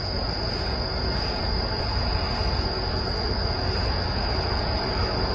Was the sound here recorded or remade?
remade